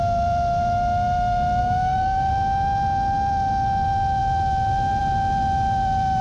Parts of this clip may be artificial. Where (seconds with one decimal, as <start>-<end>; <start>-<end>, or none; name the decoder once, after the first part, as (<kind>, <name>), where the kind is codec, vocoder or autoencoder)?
1.6-2.3 (codec, SNAC)